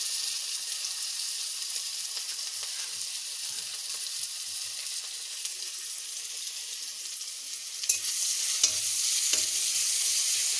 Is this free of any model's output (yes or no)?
yes